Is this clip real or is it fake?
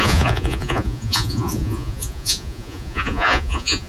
fake